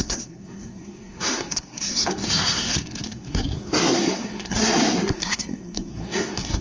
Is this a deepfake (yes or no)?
yes